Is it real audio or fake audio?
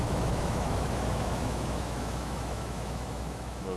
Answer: fake